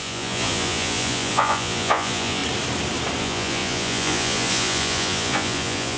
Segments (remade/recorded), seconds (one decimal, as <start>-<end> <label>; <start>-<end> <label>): 0.0-2.4 remade; 2.4-3.2 recorded; 3.2-6.0 remade

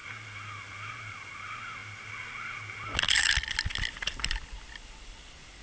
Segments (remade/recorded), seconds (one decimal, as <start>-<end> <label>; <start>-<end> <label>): 0.0-5.6 recorded

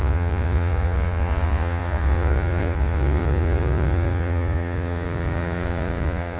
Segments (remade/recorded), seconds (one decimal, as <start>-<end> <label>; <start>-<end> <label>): 0.0-6.4 remade

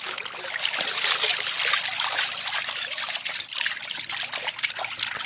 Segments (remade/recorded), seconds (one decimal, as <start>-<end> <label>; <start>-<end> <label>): 0.0-5.3 recorded

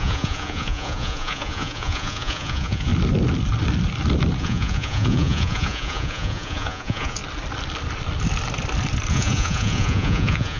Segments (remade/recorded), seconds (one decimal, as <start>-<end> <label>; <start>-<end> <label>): 0.0-2.9 remade; 2.9-4.4 recorded; 4.4-7.2 remade; 7.2-9.1 recorded; 9.1-10.6 remade

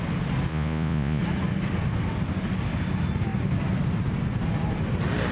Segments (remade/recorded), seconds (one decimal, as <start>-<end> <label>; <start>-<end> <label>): 0.0-0.5 recorded; 0.5-1.2 remade; 1.2-5.3 recorded